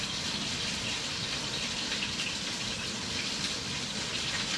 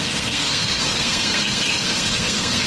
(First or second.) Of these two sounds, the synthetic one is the second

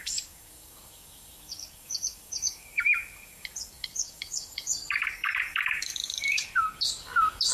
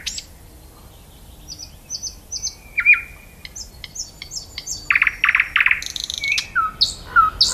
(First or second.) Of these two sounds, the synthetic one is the first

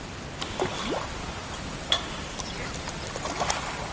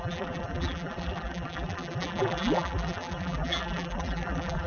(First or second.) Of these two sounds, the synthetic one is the second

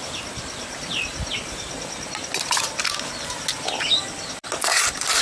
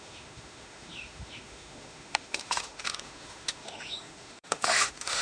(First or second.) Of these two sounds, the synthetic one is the second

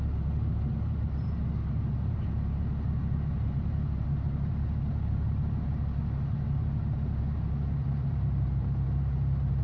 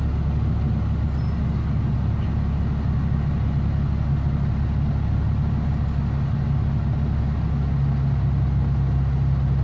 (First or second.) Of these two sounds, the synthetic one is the first